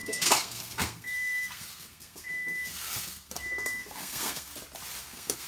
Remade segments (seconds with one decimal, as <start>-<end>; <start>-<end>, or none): 0.0-4.5; 5.0-5.5